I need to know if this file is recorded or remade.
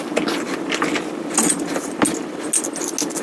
recorded